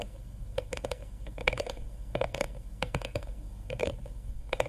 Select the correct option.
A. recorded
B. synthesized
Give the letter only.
B